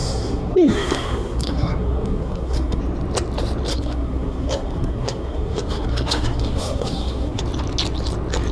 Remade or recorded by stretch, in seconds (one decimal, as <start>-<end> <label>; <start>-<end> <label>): 0.0-2.8 remade; 2.8-3.7 recorded; 3.7-7.4 remade; 7.4-8.5 recorded